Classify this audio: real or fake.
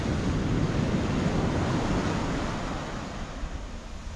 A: real